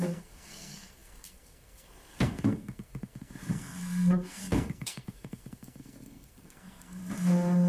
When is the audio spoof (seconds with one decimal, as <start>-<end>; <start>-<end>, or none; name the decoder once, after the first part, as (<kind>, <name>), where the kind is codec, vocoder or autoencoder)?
0.0-7.0 (codec, SNAC)